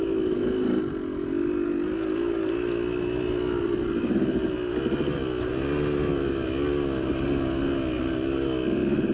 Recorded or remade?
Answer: recorded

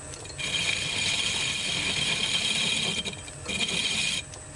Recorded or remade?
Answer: recorded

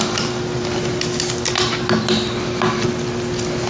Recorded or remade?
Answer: recorded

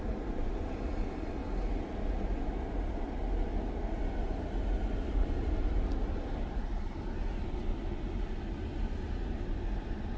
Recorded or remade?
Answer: recorded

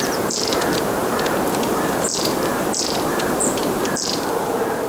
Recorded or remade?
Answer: remade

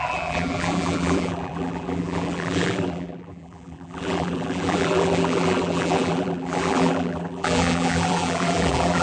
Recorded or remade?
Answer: remade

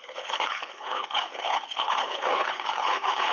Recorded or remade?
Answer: remade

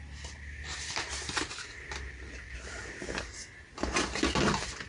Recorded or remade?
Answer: recorded